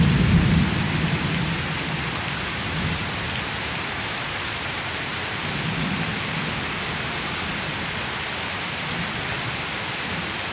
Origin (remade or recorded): recorded